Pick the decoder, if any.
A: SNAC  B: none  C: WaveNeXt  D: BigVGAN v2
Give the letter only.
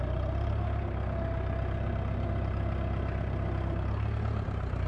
B